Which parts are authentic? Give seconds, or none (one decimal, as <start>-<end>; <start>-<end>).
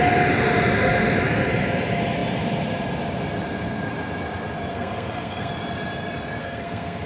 0.0-4.7; 5.5-6.4